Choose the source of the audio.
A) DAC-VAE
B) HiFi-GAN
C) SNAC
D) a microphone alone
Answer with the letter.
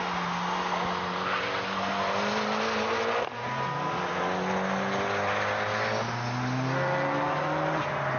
D